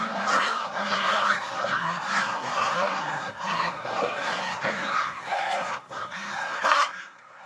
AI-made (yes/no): yes